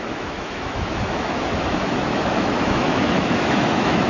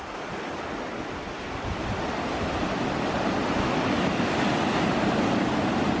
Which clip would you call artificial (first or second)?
first